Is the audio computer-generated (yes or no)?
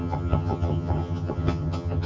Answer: yes